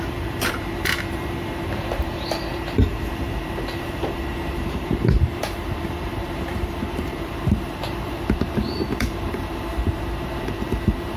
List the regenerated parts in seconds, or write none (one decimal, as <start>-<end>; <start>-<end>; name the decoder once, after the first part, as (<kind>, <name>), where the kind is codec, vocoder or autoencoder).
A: 0.0-11.2 (vocoder, BigVGAN v2)